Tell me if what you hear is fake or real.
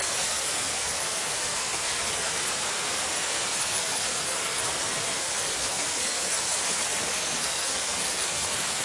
fake